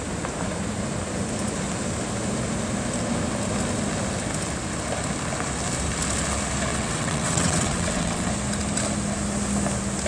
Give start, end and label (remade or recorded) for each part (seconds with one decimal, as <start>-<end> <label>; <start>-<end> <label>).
0.0-6.7 recorded; 6.7-8.3 remade; 8.3-10.1 recorded